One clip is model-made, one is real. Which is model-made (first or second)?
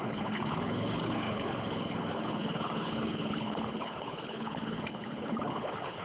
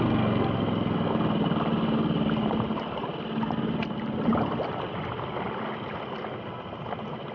first